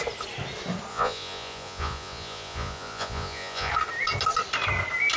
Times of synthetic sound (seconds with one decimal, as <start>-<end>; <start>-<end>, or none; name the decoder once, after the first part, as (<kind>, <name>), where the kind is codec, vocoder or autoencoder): 0.9-3.7 (vocoder, Vocos)